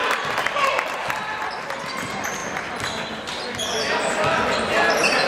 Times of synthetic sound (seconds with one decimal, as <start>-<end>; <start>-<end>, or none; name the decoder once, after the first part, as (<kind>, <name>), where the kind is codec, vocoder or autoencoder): 0.0-0.7 (vocoder, BigVGAN v2)